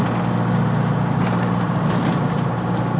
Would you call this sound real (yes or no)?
yes